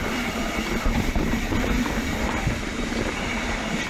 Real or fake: fake